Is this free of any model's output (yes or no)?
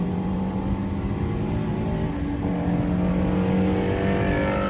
yes